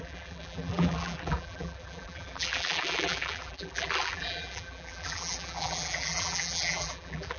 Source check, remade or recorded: remade